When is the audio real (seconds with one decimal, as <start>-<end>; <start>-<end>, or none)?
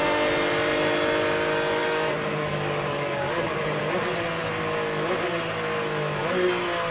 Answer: 0.0-1.8; 3.8-6.9